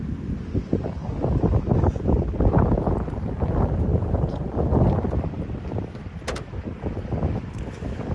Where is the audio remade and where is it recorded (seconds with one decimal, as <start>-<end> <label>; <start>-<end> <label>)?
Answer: 0.0-8.1 recorded